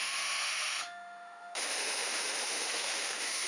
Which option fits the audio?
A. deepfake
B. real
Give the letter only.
A